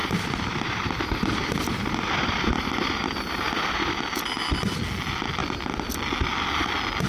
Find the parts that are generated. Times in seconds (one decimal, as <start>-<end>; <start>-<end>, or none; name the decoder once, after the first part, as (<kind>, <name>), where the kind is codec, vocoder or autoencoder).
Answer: 0.0-4.0 (vocoder, BigVGAN v2)